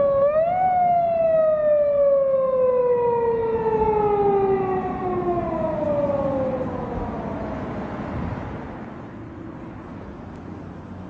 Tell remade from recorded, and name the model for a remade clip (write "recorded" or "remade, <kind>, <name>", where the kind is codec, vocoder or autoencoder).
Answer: recorded